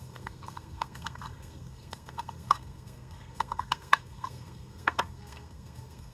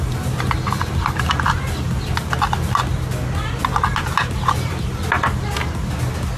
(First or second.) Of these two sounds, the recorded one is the second